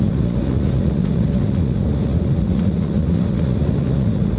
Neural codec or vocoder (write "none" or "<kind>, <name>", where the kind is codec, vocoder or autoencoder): vocoder, Vocos